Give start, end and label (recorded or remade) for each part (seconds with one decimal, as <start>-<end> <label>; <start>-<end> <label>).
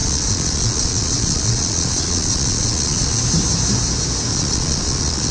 0.0-3.2 remade; 3.2-4.3 recorded; 4.3-5.3 remade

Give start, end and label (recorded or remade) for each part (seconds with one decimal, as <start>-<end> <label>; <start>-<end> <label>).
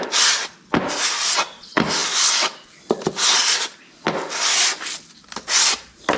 0.0-6.2 recorded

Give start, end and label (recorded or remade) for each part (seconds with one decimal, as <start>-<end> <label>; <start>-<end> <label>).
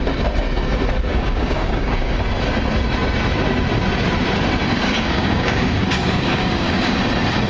0.0-1.1 recorded; 1.1-2.2 remade; 2.2-4.8 recorded; 4.8-6.9 remade; 6.9-7.5 recorded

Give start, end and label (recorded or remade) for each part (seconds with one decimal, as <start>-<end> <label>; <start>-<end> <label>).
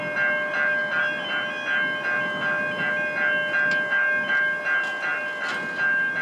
0.0-6.2 recorded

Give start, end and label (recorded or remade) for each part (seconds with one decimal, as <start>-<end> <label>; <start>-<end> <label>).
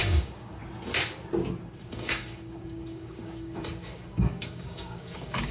0.0-0.6 remade; 0.6-1.9 recorded; 1.9-5.5 remade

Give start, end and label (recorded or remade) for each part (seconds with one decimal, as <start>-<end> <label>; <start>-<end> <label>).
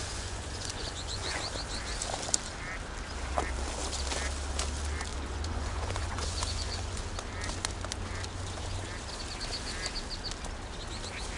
0.0-1.4 remade; 1.4-5.1 recorded; 5.1-7.0 remade; 7.0-11.4 recorded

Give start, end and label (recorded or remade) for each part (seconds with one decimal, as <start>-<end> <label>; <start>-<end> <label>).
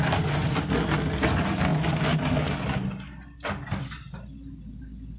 0.0-5.2 recorded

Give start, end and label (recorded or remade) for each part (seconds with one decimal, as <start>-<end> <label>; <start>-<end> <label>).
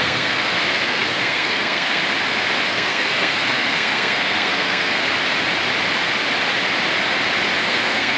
0.0-2.0 remade; 2.0-2.7 recorded; 2.7-5.0 remade; 5.0-7.6 recorded; 7.6-8.2 remade